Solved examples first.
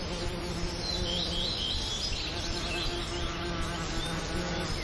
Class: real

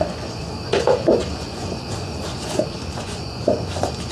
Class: fake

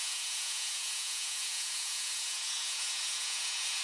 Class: fake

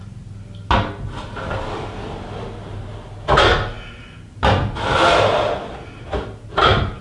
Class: real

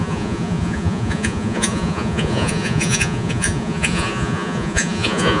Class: fake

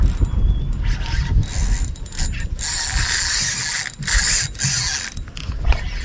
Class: real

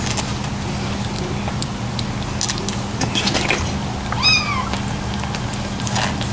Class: real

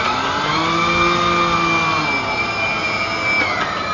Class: real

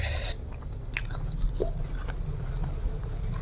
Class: real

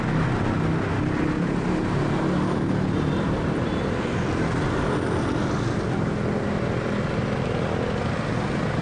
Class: real